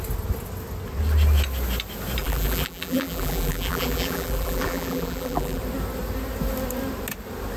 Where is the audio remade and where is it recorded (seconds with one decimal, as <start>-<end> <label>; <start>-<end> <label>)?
0.0-2.2 recorded; 2.2-5.6 remade; 5.6-7.6 recorded